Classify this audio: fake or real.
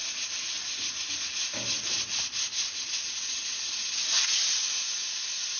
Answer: real